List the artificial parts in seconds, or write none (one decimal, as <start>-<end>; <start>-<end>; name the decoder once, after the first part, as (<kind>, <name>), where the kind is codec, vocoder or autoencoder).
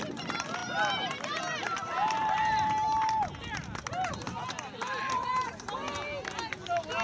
none